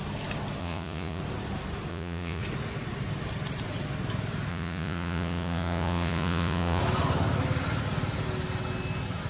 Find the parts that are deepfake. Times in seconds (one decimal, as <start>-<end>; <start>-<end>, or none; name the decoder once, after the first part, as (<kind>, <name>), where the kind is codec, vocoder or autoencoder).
0.6-1.2 (vocoder, Vocos); 1.9-2.4; 4.5-6.8